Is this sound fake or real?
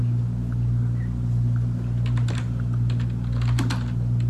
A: real